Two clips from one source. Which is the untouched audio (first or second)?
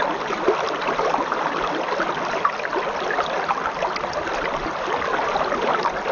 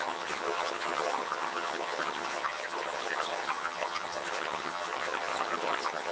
first